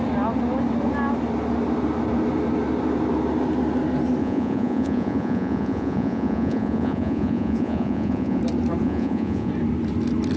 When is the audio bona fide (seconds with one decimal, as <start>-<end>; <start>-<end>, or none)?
0.0-4.2; 8.4-8.8; 9.5-10.4